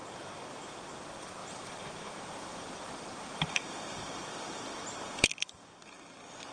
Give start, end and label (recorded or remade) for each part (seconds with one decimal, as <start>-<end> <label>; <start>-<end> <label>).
0.0-0.8 remade; 0.8-1.4 recorded; 1.4-5.3 remade; 5.3-6.5 recorded